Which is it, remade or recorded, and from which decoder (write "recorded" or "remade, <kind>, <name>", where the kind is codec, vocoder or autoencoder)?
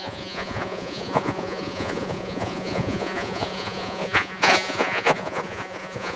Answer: remade, vocoder, Vocos